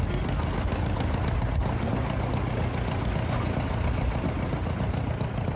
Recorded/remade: recorded